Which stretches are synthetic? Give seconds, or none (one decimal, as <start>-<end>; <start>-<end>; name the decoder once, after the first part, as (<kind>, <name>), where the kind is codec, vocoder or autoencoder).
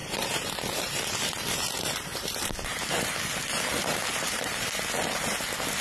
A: 0.0-3.2 (vocoder, BigVGAN v2); 3.8-4.8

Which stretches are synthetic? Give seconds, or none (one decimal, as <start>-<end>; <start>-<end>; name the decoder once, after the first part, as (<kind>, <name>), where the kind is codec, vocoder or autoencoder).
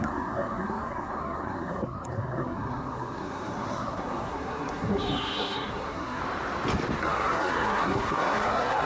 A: 0.0-6.2 (codec, SNAC); 7.0-8.9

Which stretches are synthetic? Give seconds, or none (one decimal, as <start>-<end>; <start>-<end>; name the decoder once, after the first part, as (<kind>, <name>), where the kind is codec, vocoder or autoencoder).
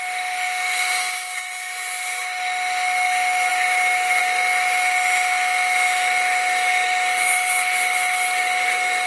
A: 0.0-9.1 (autoencoder, DAC-VAE)